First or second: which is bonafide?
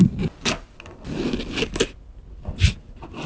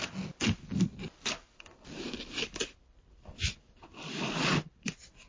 first